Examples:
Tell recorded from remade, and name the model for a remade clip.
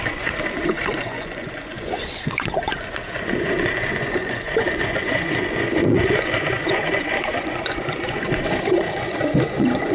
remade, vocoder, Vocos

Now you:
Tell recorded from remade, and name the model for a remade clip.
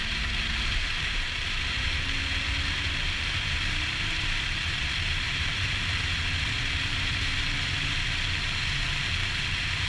remade, vocoder, BigVGAN v2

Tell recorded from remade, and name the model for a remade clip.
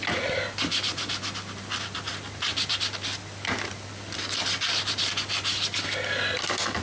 recorded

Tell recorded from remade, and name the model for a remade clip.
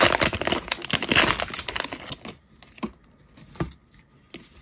recorded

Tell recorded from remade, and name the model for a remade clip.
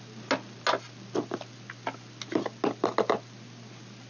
recorded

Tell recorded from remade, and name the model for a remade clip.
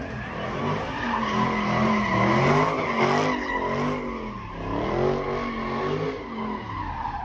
recorded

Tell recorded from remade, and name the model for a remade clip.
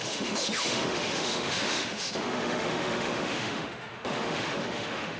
remade, autoencoder, DAC-VAE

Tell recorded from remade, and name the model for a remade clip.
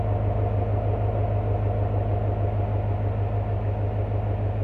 recorded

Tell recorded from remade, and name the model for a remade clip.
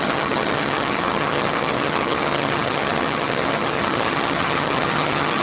remade, vocoder, HiFi-GAN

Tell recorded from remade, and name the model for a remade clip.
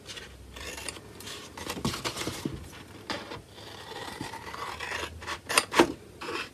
remade, vocoder, BigVGAN v2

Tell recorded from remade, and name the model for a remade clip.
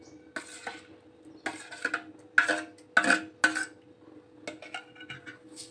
recorded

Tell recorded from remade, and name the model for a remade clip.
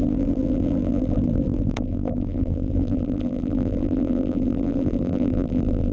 remade, vocoder, BigVGAN v2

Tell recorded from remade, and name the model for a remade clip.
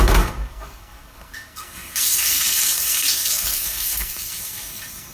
remade, codec, SNAC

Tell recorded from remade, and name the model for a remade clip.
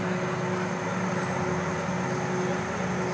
recorded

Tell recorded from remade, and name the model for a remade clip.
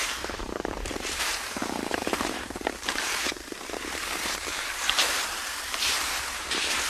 remade, vocoder, BigVGAN v2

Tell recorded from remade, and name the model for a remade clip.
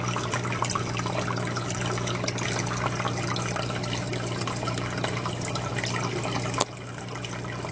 recorded